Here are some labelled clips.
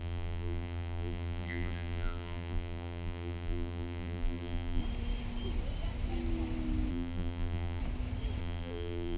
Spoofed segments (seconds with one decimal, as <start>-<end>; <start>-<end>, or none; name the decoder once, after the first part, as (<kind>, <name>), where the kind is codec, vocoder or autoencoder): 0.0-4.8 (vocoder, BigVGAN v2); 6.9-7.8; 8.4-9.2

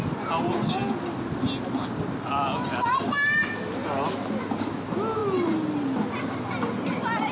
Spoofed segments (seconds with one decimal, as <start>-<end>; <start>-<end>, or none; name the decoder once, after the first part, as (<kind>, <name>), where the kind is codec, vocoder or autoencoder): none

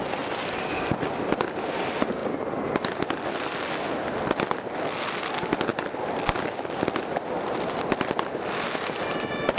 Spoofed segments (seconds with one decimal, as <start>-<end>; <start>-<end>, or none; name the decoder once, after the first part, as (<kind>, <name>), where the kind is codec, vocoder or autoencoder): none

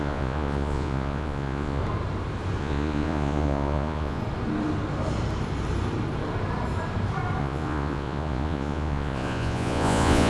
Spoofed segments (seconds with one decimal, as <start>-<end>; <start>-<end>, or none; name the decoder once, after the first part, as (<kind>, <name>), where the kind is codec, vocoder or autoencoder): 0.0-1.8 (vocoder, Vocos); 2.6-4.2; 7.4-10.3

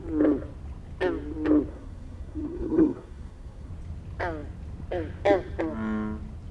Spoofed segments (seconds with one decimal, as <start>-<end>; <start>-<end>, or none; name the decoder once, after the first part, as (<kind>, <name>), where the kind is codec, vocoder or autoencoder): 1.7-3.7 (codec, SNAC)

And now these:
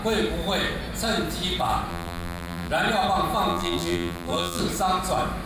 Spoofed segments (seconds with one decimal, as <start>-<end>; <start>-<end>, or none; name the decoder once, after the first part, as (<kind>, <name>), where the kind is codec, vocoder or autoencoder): 1.9-2.7 (vocoder, BigVGAN v2); 3.5-4.6